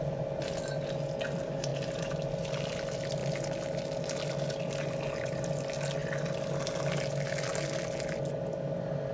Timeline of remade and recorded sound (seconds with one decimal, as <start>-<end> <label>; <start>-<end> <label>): 0.0-9.1 recorded